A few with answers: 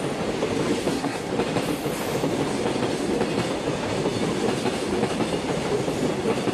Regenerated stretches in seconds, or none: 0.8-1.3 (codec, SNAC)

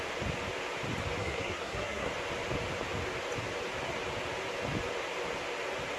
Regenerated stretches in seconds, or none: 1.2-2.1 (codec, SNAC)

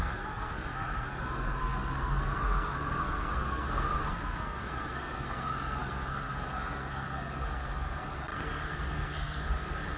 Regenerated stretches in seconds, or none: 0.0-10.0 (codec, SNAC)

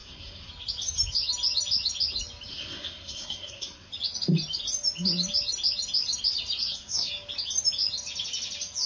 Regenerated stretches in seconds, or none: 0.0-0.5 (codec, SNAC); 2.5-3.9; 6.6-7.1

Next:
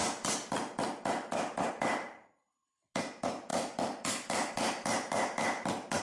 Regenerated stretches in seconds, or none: none

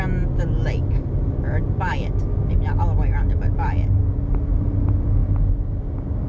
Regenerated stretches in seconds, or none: none